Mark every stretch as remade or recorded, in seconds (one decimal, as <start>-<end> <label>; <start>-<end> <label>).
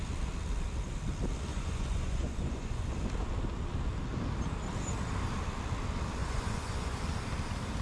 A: 0.0-1.5 recorded; 1.5-2.9 remade; 2.9-6.2 recorded; 6.2-7.0 remade; 7.0-7.8 recorded